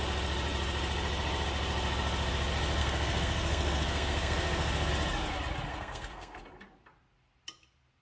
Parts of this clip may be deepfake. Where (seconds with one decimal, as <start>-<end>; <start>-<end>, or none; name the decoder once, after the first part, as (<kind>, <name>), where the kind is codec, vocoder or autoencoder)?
2.8-4.9 (codec, SNAC); 5.7-6.4